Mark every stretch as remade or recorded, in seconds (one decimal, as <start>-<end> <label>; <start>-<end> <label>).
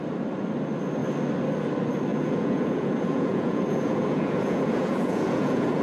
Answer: 0.0-2.1 recorded; 2.1-5.8 remade